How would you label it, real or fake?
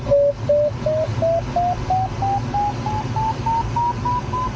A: real